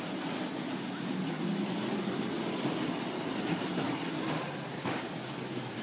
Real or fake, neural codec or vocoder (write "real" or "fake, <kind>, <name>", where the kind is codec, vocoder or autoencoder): real